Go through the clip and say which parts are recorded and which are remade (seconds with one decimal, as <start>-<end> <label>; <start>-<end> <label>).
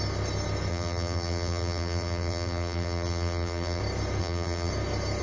0.0-0.7 recorded; 0.7-3.8 remade; 3.8-4.2 recorded; 4.2-4.7 remade; 4.7-5.2 recorded